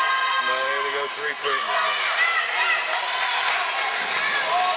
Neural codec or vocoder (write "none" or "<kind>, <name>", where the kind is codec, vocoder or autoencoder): none